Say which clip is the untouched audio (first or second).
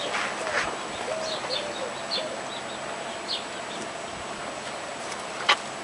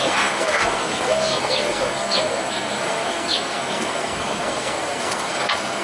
first